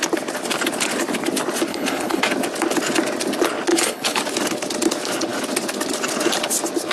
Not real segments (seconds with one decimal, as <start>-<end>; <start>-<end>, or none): 1.7-2.2; 3.7-4.2